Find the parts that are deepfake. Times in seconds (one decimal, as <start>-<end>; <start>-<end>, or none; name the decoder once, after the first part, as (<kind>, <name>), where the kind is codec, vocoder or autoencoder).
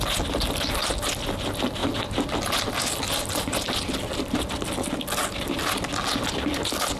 none